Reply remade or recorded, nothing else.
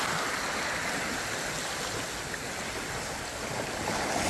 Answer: recorded